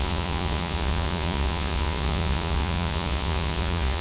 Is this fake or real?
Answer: fake